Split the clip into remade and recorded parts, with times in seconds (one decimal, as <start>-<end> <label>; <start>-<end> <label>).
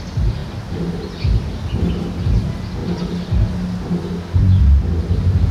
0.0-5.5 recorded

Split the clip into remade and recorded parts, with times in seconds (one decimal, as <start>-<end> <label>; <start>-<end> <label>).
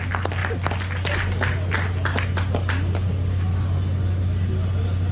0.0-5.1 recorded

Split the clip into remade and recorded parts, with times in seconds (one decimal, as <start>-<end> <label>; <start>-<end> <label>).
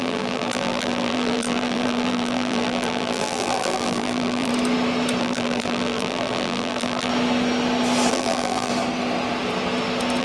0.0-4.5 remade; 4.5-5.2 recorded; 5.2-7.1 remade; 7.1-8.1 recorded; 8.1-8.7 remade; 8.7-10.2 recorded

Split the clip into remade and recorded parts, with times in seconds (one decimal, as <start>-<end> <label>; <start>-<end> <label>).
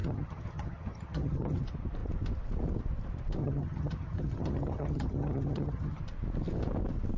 0.0-1.6 remade; 1.6-3.4 recorded; 3.4-6.0 remade; 6.0-7.2 recorded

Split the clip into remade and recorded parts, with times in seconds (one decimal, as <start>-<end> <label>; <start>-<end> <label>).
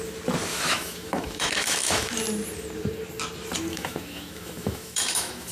0.0-0.5 recorded; 0.5-2.1 remade; 2.1-3.7 recorded; 3.7-5.5 remade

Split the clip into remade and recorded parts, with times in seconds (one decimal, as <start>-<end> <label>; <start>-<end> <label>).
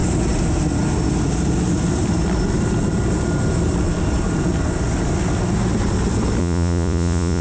0.0-6.4 recorded; 6.4-7.4 remade